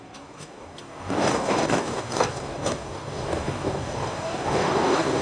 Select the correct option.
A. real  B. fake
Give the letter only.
B